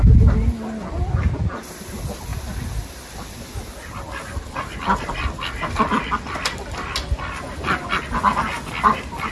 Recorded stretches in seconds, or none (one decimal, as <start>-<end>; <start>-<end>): 0.0-9.3